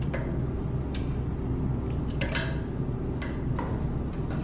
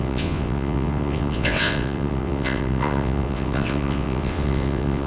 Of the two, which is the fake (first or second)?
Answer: second